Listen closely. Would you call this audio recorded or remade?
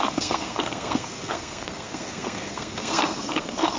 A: remade